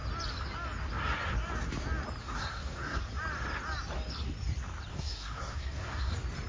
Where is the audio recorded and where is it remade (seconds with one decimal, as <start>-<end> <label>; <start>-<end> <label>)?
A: 0.0-2.2 recorded; 2.2-3.0 remade; 3.0-4.9 recorded; 4.9-6.1 remade; 6.1-6.5 recorded